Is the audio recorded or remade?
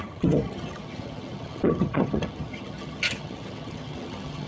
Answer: remade